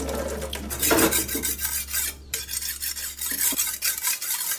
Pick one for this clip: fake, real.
real